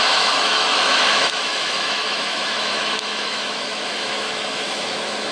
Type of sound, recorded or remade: remade